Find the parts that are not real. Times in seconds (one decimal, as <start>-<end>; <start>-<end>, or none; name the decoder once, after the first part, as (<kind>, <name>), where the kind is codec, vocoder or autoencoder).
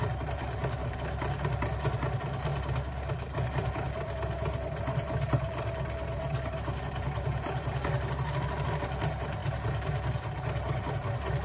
none